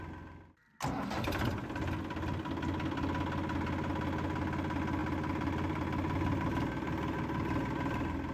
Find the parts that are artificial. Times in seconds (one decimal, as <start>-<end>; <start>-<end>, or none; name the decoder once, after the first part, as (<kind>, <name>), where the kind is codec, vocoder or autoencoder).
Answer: none